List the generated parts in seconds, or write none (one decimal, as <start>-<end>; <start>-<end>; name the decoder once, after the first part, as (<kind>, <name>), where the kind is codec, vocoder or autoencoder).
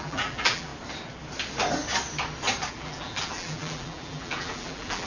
0.0-0.7 (vocoder, BigVGAN v2); 2.7-5.1